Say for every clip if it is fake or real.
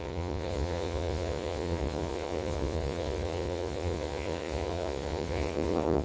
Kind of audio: fake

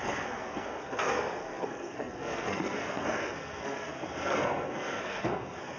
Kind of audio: fake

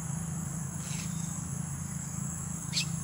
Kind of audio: fake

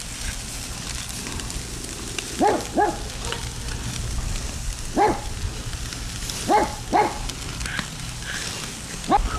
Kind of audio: real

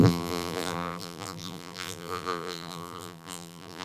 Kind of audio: fake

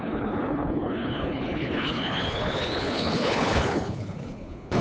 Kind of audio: fake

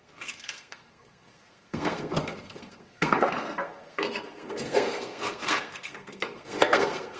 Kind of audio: fake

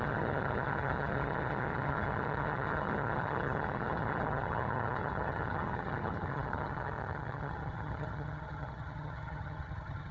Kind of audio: fake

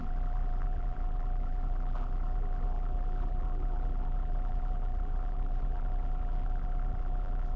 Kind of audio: fake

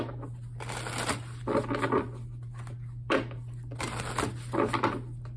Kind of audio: real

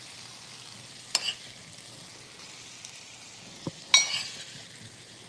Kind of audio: real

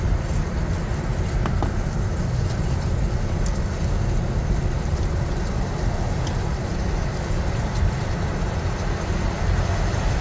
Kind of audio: real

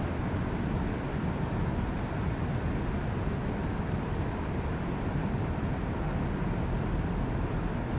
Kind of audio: real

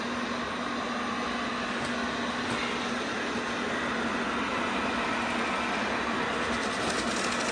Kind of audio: real